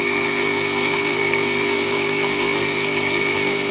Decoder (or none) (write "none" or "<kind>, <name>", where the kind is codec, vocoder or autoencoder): codec, SNAC